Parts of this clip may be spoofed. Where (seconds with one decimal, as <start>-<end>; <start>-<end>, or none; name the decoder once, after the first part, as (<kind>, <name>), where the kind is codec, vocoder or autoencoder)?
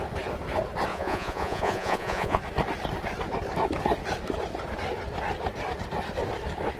0.9-2.4 (vocoder, Vocos)